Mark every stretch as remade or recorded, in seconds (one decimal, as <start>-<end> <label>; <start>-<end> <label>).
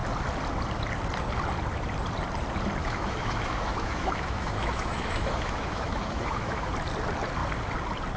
0.0-2.8 recorded; 2.8-6.7 remade; 6.7-8.2 recorded